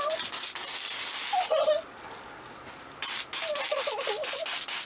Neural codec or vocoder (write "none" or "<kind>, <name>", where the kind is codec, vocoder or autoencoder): none